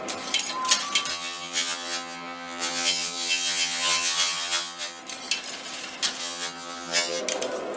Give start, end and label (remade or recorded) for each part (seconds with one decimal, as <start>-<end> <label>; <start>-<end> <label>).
0.0-1.1 recorded; 1.1-5.0 remade; 5.0-6.2 recorded; 6.2-7.2 remade; 7.2-7.8 recorded